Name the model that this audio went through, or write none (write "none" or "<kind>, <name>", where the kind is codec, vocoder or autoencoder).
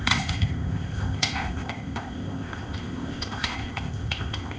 codec, ZipCodec